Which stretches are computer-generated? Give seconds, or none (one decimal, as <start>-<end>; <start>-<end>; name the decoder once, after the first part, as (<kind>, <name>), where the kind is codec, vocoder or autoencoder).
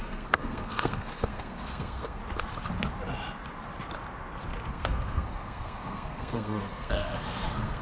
0.0-2.2 (codec, SNAC); 4.7-7.8